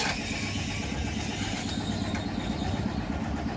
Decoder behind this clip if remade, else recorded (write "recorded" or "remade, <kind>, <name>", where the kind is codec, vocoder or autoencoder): recorded